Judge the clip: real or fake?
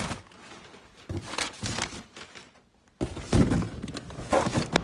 real